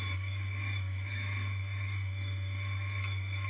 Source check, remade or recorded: remade